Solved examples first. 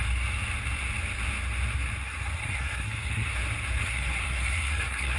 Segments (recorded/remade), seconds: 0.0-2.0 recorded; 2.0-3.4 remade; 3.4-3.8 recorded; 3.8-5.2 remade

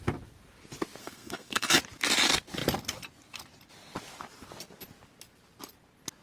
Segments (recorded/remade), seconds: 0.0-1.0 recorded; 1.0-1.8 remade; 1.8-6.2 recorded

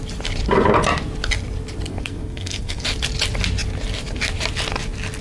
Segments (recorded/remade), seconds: 0.0-1.9 recorded; 1.9-2.8 remade; 2.8-5.2 recorded